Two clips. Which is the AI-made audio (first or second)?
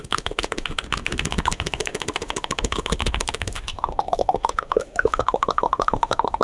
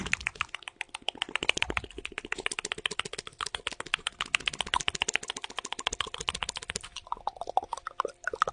first